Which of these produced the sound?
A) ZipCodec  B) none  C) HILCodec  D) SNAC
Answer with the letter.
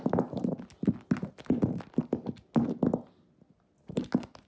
B